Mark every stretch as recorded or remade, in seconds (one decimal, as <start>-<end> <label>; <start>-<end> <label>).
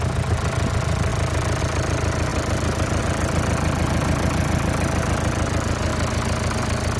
0.0-2.3 recorded; 2.3-3.0 remade; 3.0-7.0 recorded